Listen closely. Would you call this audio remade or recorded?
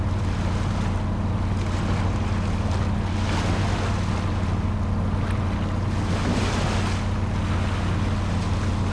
recorded